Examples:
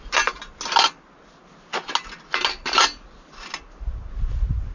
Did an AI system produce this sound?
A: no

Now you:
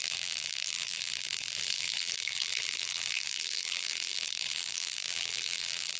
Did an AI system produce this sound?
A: yes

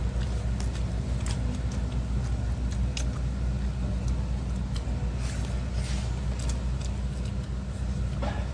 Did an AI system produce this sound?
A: no